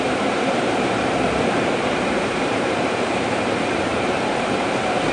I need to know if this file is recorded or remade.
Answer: remade